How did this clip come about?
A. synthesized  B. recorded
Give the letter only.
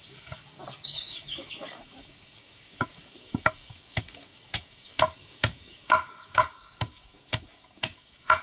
A